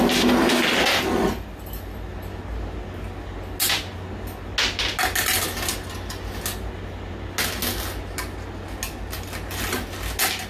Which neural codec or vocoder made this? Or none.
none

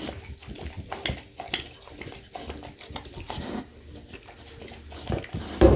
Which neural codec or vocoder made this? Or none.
none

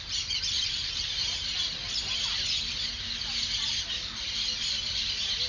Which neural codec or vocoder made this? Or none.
none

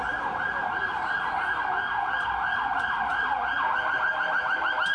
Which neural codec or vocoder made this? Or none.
none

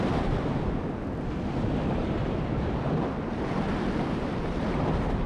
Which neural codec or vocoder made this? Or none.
none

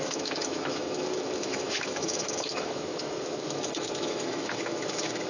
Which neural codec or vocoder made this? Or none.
autoencoder, DAC-VAE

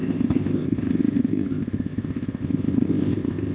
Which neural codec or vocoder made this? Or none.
codec, ZipCodec